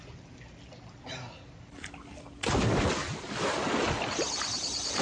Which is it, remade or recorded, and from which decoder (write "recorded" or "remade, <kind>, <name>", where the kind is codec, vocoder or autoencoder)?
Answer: recorded